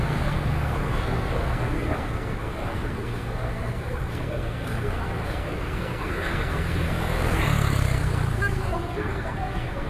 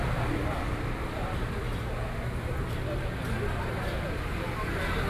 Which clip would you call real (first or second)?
second